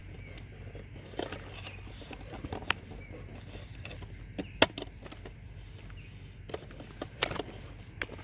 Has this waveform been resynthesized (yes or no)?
no